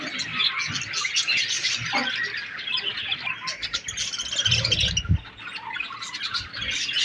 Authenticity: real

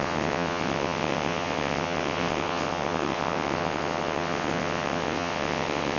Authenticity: fake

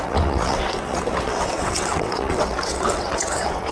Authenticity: fake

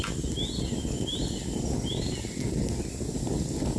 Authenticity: real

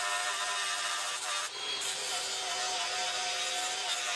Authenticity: fake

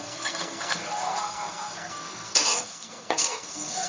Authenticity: fake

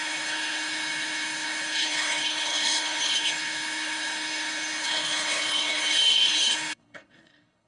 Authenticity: fake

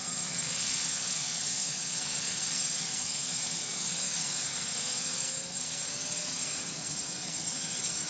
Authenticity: fake